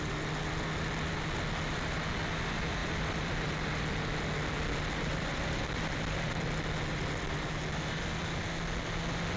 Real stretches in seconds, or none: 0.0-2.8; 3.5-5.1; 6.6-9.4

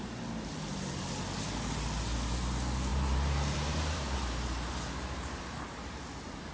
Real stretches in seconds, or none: 0.0-2.9; 5.4-6.5

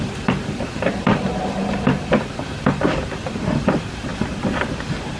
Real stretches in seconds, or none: none

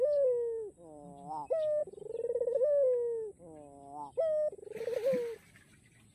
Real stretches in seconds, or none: 0.0-6.1